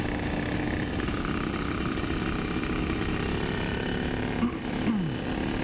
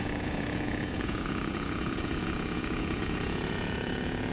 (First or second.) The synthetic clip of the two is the second